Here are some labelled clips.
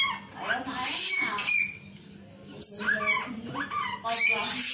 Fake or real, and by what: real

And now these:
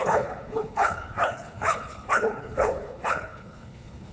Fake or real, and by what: fake, codec, HILCodec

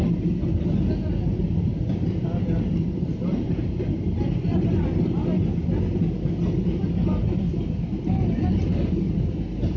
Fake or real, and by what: real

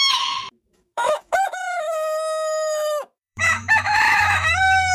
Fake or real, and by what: fake, autoencoder, DAC-VAE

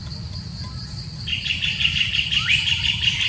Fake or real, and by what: real